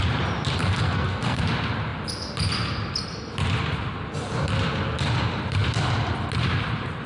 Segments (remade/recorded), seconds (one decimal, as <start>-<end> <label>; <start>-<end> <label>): 0.0-0.6 recorded; 0.6-1.4 remade; 1.4-7.1 recorded